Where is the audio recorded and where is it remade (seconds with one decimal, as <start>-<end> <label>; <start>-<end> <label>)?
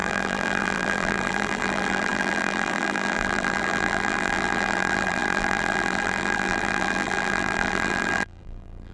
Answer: 0.0-8.9 remade